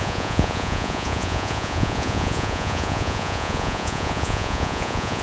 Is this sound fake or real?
fake